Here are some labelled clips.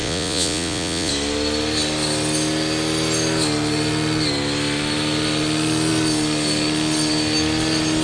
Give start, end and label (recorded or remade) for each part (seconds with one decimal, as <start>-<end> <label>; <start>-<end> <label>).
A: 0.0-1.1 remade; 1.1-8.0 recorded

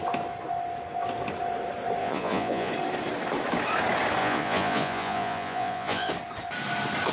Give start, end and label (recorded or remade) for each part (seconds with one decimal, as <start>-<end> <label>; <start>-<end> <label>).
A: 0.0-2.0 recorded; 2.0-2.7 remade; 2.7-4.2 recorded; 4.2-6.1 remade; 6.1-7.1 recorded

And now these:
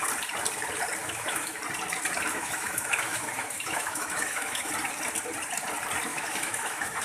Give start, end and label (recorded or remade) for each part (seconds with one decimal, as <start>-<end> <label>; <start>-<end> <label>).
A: 0.0-1.0 recorded; 1.0-1.6 remade; 1.6-2.3 recorded; 2.3-4.7 remade; 4.7-6.1 recorded; 6.1-7.0 remade

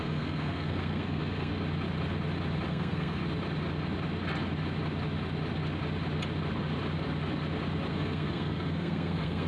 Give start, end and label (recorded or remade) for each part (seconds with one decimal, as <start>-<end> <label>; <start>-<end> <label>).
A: 0.0-1.5 remade; 1.5-2.7 recorded; 2.7-3.2 remade; 3.2-7.9 recorded; 7.9-9.5 remade

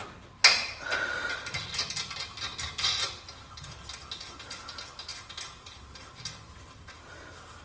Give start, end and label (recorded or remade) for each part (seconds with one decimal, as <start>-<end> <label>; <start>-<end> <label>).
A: 0.0-7.6 recorded